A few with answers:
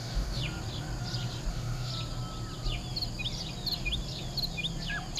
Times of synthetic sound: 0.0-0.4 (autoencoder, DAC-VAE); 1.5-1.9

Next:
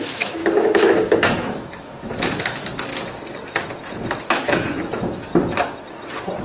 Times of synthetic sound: 0.0-2.9 (autoencoder, DAC-VAE); 4.2-5.3

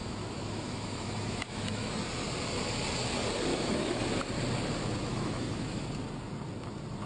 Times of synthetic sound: 0.0-1.9 (autoencoder, DAC-VAE); 3.5-4.0; 5.1-5.8

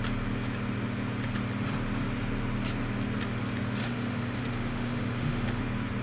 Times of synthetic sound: 3.8-5.6 (autoencoder, DAC-VAE)

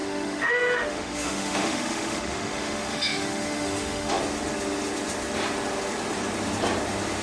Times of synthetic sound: 0.0-4.2 (autoencoder, DAC-VAE)

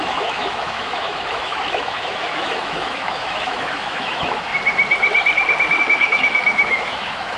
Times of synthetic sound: 0.0-4.5 (autoencoder, DAC-VAE); 5.8-7.4

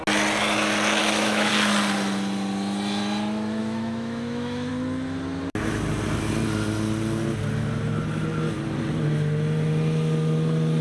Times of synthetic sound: 1.0-1.5 (autoencoder, DAC-VAE); 3.6-4.7

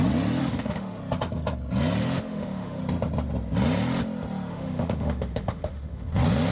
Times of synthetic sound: 0.4-1.0 (autoencoder, DAC-VAE); 2.0-2.8; 4.5-6.1